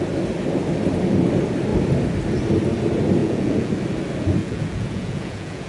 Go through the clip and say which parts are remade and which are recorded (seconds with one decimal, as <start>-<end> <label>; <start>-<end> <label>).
0.0-3.2 recorded; 3.2-3.7 remade; 3.7-4.4 recorded; 4.4-5.7 remade